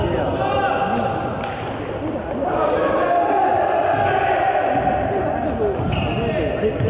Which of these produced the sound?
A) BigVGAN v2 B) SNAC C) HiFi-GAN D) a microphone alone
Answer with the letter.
D